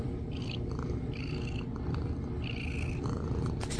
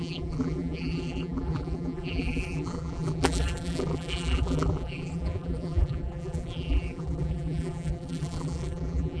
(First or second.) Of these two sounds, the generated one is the second